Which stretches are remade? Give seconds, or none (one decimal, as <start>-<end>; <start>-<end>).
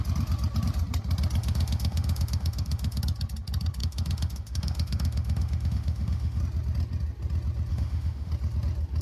1.4-3.0; 3.8-6.4; 7.7-8.3